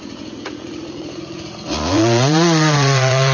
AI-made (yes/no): yes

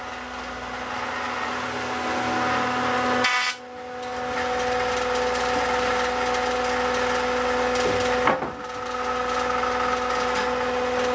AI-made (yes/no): no